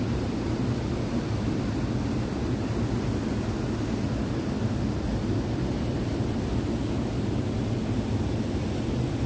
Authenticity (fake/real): real